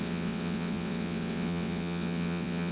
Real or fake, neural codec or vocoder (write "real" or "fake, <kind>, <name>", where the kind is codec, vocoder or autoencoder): fake, vocoder, WaveNeXt